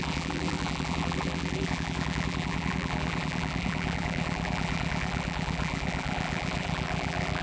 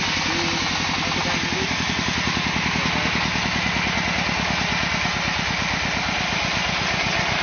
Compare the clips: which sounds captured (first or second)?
second